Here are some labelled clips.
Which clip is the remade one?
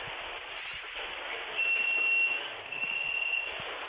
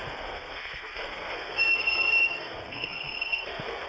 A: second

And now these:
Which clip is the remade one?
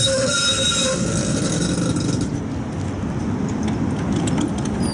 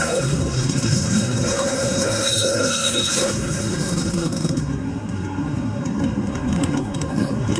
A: second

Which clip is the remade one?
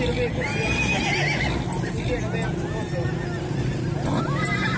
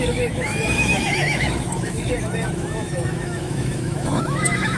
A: second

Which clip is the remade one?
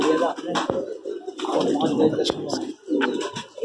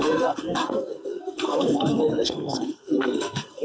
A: second